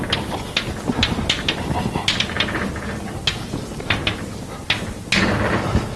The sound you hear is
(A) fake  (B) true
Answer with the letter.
B